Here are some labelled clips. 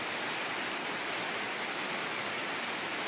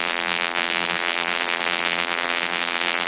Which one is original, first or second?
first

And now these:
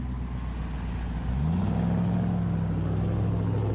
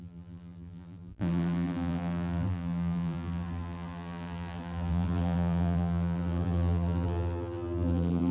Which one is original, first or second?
first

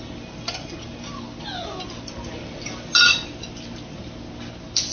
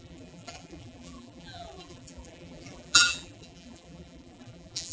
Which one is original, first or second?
first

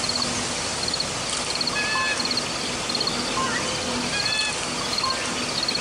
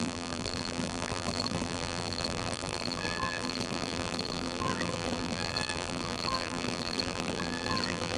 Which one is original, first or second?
first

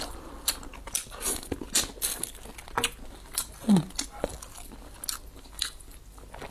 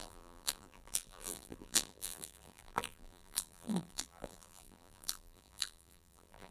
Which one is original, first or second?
first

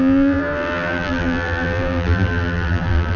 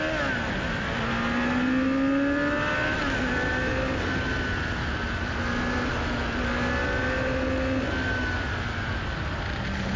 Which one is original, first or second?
second